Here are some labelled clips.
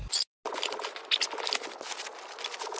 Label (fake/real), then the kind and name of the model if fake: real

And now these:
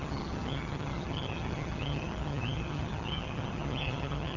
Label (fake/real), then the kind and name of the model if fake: fake, vocoder, HiFi-GAN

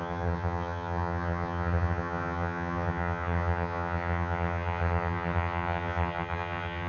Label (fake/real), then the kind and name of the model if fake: fake, vocoder, HiFi-GAN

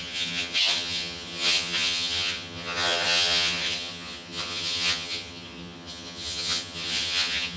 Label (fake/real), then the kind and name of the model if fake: fake, vocoder, HiFi-GAN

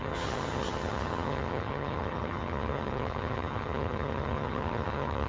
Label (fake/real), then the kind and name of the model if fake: fake, vocoder, HiFi-GAN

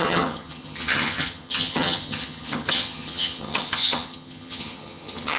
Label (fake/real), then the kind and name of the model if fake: fake, vocoder, HiFi-GAN